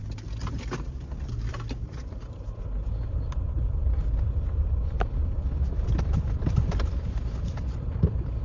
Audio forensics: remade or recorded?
recorded